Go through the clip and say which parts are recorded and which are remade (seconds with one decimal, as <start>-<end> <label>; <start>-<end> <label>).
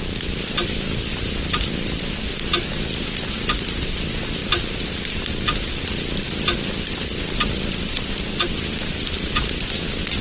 0.0-10.2 recorded